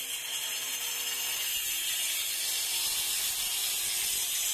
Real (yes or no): yes